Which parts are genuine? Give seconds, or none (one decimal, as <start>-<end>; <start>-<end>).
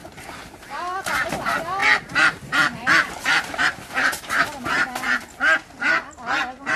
0.5-1.8; 4.4-6.8